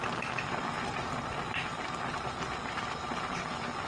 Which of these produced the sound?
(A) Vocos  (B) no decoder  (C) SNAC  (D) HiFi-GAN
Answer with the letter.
B